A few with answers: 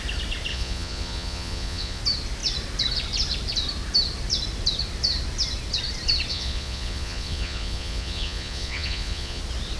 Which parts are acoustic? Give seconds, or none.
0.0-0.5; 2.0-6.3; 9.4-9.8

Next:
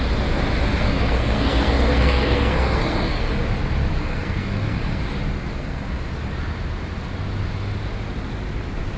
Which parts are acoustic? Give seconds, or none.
0.0-0.7; 3.3-3.9; 5.0-5.5; 6.0-9.0

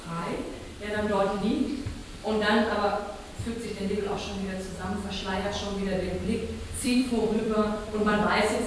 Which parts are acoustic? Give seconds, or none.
2.0-3.9; 4.3-6.2

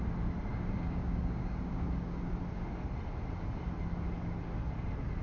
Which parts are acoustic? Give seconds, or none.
0.0-0.5; 2.3-5.2

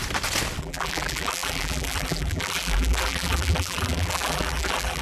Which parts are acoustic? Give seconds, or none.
0.0-0.6

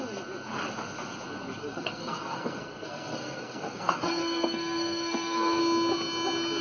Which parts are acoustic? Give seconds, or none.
0.0-1.6; 5.6-6.6

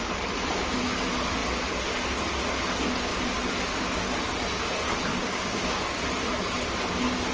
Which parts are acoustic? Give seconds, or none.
0.0-5.1; 6.0-7.3

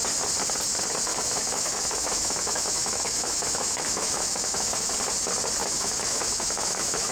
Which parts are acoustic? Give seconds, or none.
0.0-1.1; 4.9-5.6